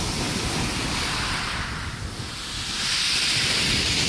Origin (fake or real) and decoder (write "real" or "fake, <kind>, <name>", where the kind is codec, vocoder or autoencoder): real